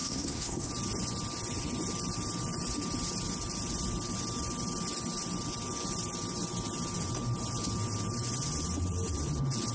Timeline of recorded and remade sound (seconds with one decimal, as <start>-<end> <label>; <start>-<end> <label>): 0.0-0.7 remade; 0.7-9.7 recorded